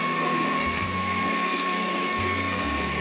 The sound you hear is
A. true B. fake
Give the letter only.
B